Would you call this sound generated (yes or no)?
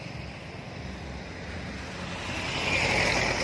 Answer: no